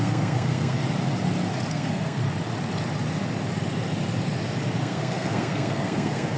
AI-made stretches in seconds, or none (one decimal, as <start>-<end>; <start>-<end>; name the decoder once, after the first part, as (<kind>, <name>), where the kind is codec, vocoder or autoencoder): 0.0-0.8 (codec, SNAC); 1.7-2.2; 4.8-6.4